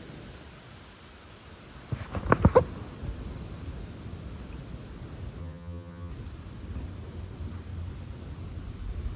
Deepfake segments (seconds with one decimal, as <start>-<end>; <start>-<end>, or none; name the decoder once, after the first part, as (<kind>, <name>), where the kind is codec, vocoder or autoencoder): 5.4-6.1 (vocoder, HiFi-GAN)